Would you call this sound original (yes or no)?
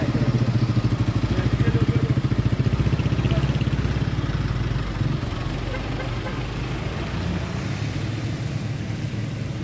yes